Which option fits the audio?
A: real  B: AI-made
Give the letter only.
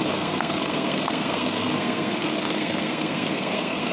B